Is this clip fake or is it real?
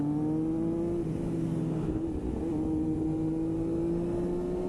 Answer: real